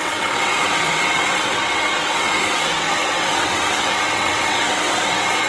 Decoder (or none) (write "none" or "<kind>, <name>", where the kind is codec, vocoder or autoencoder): vocoder, WaveNeXt